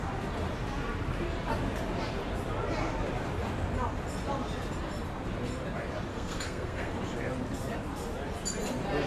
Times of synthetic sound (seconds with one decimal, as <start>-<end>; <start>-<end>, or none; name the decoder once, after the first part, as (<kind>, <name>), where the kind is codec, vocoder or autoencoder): 6.1-7.0 (codec, SNAC)